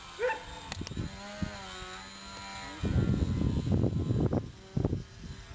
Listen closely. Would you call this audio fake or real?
real